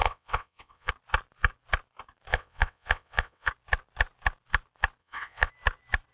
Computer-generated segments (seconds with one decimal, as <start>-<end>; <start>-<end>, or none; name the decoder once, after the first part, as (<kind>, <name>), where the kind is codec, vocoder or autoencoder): 0.0-0.9 (vocoder, WaveNeXt); 2.3-3.5; 5.0-5.5